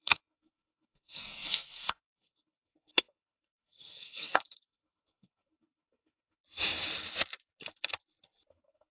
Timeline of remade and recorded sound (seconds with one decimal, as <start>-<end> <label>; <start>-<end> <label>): 0.0-6.4 remade; 6.4-8.5 recorded; 8.5-8.9 remade